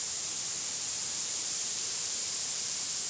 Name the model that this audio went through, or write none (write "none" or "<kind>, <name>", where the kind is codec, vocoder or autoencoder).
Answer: vocoder, BigVGAN v2